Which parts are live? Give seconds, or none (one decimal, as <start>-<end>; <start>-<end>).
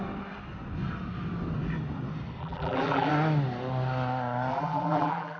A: 0.0-2.4; 3.1-4.5